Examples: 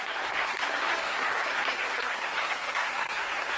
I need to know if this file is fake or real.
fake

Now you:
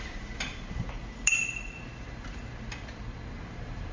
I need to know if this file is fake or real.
fake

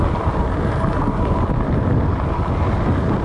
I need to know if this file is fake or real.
real